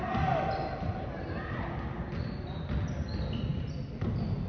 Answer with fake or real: real